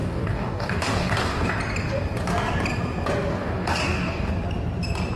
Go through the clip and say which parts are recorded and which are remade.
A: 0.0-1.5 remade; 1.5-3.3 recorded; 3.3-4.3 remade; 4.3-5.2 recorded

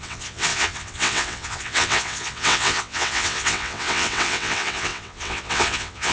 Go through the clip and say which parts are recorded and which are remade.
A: 0.0-6.1 remade

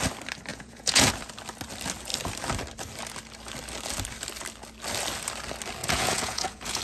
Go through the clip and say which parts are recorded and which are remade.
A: 0.0-0.5 recorded; 0.5-1.1 remade; 1.1-5.8 recorded; 5.8-6.8 remade